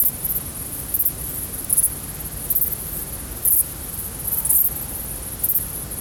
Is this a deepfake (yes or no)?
no